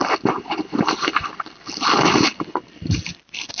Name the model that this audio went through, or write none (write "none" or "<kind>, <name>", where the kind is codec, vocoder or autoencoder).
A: none